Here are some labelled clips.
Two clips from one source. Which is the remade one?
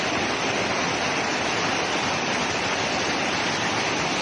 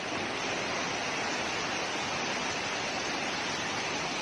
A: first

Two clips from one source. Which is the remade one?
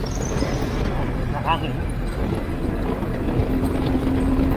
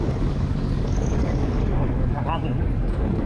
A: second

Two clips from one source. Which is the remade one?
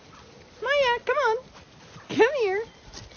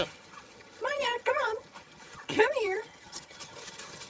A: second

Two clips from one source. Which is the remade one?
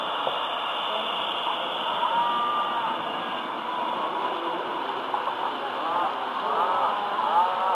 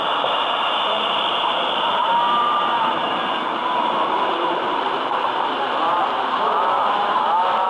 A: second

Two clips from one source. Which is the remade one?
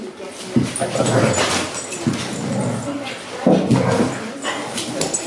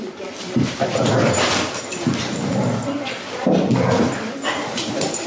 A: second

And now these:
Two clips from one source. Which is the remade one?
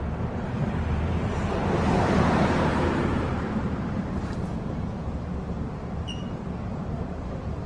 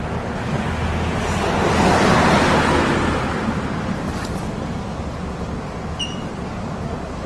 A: first